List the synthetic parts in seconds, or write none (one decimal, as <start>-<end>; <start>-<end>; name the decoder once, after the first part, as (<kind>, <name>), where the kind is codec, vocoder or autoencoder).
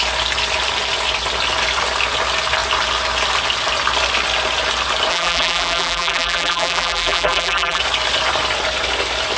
5.1-7.8 (vocoder, BigVGAN v2)